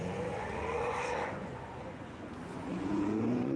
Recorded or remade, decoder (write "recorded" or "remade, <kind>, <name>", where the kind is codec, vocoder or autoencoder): remade, vocoder, Vocos